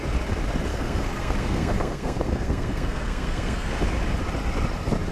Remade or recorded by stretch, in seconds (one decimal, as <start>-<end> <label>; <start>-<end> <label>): 0.0-0.7 recorded; 0.7-3.8 remade; 3.8-5.1 recorded